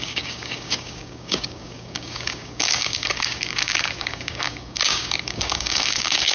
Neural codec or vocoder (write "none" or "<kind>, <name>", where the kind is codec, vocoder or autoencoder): codec, DAC